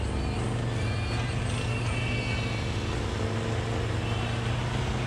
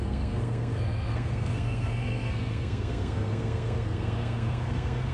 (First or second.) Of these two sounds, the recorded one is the first